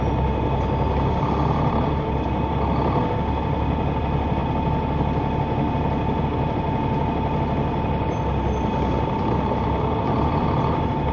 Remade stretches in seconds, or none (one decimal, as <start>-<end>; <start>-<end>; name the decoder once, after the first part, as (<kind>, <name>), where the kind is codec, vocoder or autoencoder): none